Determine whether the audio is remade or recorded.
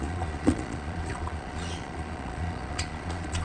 remade